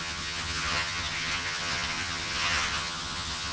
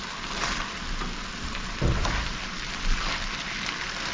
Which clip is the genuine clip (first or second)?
second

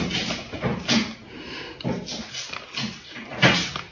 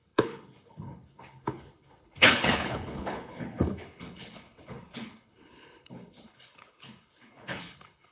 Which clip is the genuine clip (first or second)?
first